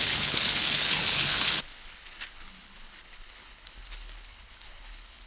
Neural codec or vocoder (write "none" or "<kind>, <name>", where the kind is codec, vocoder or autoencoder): codec, HILCodec